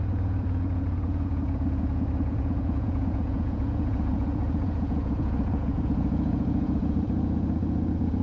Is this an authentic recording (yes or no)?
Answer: no